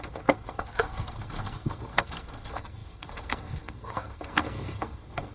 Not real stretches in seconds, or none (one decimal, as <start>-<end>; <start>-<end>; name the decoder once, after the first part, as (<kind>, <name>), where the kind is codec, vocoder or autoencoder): 0.0-5.3 (codec, SNAC)